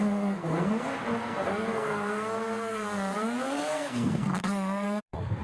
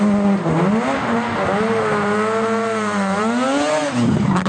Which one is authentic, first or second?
second